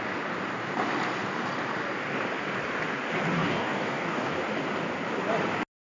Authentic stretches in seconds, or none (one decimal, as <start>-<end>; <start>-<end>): 0.0-3.3; 4.3-6.0